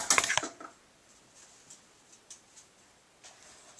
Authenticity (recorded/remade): recorded